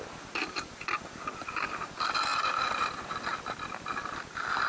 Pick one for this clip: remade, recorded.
recorded